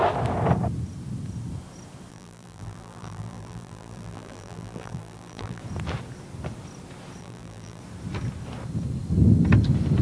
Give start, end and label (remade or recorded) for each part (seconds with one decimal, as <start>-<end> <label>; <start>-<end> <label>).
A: 0.0-2.1 recorded; 2.1-5.6 remade; 5.6-7.2 recorded; 7.2-7.8 remade; 7.8-10.0 recorded